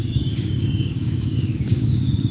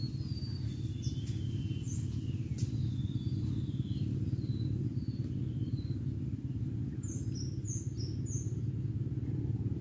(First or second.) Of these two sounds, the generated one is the first